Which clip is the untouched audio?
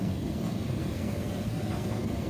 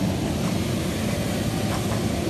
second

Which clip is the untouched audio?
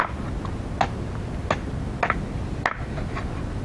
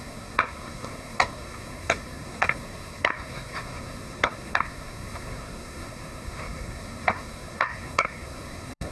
first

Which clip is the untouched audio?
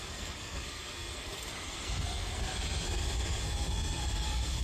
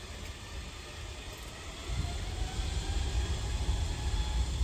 second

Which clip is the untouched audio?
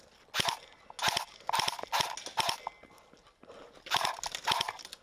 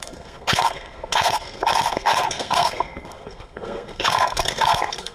first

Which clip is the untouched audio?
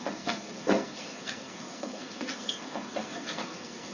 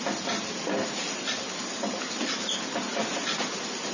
second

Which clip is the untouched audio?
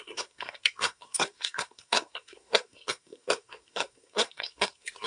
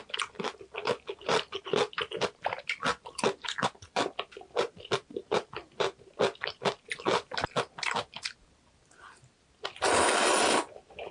second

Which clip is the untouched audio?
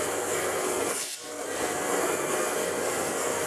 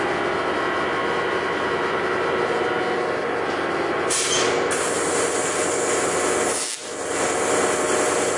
second